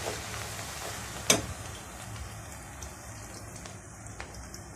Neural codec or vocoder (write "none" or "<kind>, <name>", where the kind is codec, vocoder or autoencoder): none